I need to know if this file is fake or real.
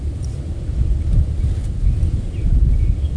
real